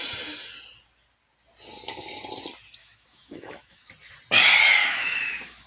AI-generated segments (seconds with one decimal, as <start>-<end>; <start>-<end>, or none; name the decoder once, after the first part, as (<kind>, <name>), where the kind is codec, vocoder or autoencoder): 2.8-3.9 (autoencoder, DAC-VAE); 4.8-5.7